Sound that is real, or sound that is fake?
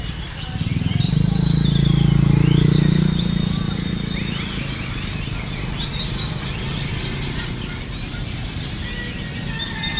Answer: real